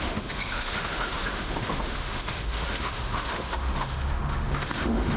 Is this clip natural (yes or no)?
no